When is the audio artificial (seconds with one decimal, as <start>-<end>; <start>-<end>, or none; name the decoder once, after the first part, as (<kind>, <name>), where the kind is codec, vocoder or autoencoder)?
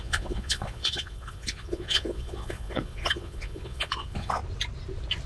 0.0-4.4 (vocoder, Vocos)